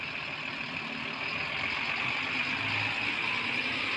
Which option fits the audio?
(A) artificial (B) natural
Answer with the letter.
B